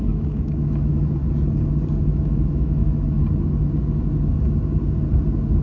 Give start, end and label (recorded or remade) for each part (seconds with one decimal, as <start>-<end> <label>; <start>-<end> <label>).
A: 0.0-1.2 remade; 1.2-2.0 recorded; 2.0-3.2 remade; 3.2-5.6 recorded